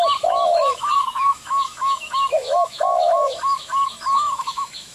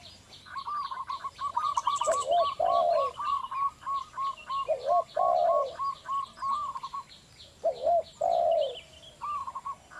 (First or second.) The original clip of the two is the second